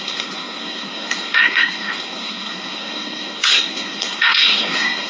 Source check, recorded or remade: remade